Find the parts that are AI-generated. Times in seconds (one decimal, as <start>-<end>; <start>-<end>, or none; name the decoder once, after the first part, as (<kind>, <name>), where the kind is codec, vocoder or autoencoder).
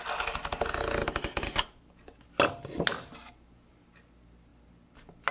1.0-2.2 (vocoder, BigVGAN v2)